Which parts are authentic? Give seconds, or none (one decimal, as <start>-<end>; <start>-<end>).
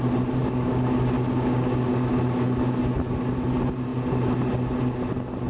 0.0-0.4; 2.1-5.5